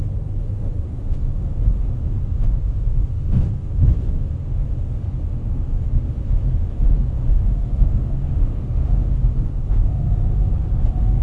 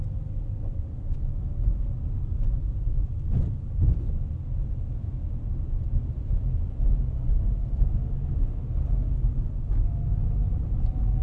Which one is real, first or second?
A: second